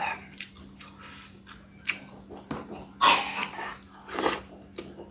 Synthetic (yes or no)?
no